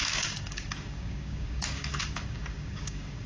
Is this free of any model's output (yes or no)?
no